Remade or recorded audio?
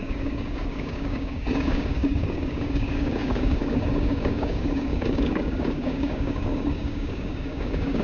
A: remade